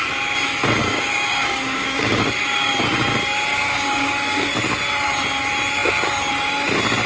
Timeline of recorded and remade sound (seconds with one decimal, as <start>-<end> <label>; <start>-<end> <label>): 0.0-0.8 recorded; 0.8-2.8 remade; 2.8-3.5 recorded; 3.5-4.5 remade; 4.5-7.1 recorded